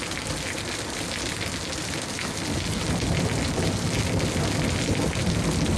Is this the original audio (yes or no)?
yes